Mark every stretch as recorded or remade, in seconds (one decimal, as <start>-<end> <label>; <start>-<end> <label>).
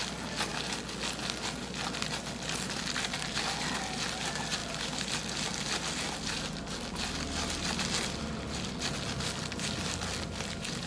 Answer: 0.0-10.9 recorded